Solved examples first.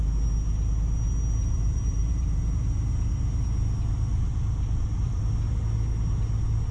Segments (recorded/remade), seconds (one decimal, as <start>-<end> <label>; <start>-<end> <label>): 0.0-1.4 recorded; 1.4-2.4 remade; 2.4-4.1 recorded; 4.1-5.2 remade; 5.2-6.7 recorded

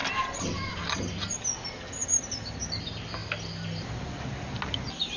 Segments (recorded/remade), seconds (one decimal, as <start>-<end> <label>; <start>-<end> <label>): 0.0-3.2 recorded; 3.2-4.4 remade; 4.4-5.2 recorded

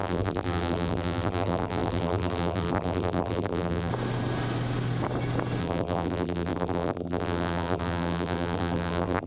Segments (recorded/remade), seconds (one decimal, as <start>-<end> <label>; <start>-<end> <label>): 0.0-3.9 remade; 3.9-5.6 recorded; 5.6-9.3 remade

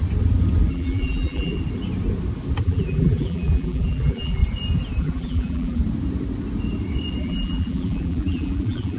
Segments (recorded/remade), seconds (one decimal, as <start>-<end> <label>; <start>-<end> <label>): 0.0-0.7 recorded; 0.7-1.5 remade; 1.5-2.6 recorded; 2.6-4.4 remade; 4.4-5.0 recorded; 5.0-5.8 remade; 5.8-7.2 recorded; 7.2-9.0 remade